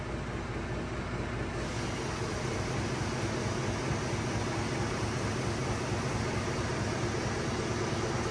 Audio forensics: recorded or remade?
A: recorded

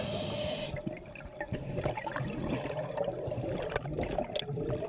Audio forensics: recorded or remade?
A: recorded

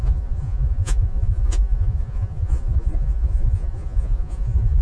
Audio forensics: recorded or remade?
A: remade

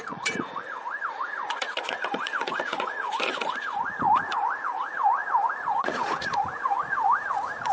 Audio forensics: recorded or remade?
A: remade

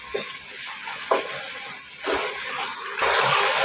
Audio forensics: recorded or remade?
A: recorded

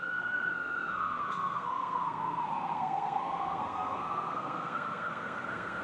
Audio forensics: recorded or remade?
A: remade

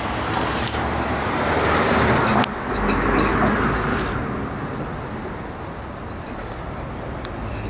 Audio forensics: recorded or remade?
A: recorded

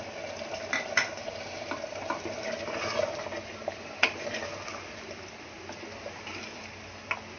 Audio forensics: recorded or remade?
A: recorded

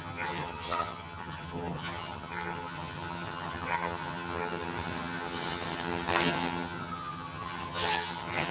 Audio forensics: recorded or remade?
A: remade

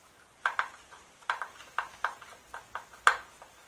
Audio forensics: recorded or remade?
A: recorded